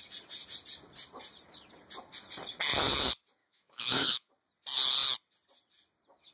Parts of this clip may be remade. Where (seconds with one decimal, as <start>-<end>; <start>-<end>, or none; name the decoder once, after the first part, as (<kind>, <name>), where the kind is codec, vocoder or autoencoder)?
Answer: 3.4-4.3 (autoencoder, DAC-VAE)